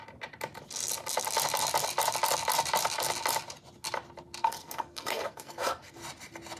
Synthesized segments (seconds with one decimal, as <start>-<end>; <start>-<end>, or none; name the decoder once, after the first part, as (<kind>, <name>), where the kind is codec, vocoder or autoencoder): 4.4-6.0 (codec, SNAC)